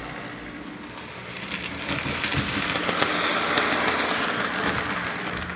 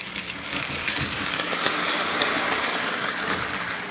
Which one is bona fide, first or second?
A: first